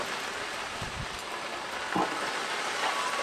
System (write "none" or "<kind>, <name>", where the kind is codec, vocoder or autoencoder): none